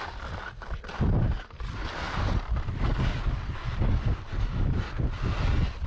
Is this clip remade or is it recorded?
recorded